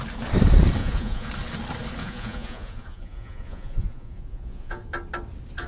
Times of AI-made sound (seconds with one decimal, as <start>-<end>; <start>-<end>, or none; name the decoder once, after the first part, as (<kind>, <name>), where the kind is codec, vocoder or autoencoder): 0.8-1.3 (vocoder, Vocos); 2.0-4.9